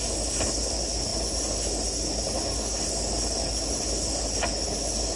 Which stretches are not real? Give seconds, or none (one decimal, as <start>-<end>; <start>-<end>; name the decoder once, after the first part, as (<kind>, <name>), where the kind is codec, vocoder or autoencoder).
none